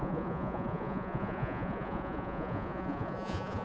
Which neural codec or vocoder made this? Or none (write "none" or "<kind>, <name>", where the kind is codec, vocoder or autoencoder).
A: vocoder, Vocos